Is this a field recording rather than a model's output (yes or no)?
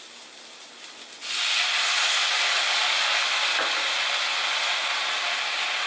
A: yes